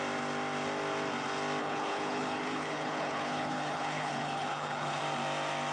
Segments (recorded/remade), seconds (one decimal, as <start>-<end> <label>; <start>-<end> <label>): 0.0-1.6 recorded; 1.6-5.0 remade; 5.0-5.7 recorded